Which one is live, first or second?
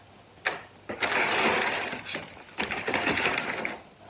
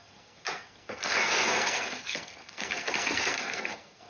first